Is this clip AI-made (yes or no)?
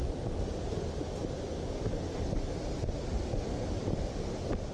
no